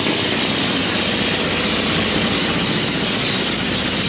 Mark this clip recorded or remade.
recorded